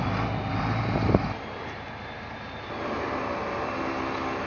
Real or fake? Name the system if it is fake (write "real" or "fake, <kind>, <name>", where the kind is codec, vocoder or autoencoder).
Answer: real